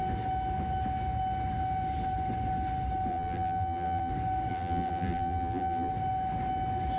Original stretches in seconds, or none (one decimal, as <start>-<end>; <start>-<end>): 0.0-3.1; 4.1-4.5; 5.9-7.0